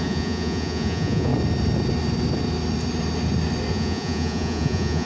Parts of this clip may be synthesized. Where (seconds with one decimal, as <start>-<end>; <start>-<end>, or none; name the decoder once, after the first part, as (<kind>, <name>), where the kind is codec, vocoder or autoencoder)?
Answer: 0.0-1.3 (vocoder, Vocos); 3.7-5.1